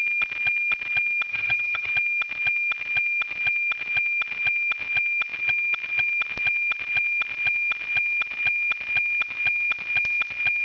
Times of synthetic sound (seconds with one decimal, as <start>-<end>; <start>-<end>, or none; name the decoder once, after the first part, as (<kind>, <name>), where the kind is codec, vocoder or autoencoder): 1.3-1.9 (vocoder, HiFi-GAN)